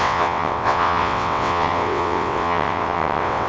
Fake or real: fake